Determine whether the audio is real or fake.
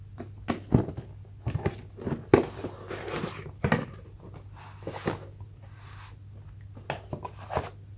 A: real